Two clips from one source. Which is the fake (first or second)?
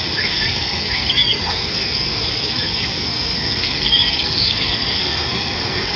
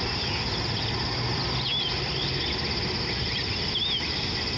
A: first